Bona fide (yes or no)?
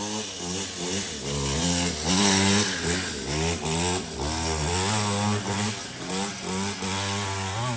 yes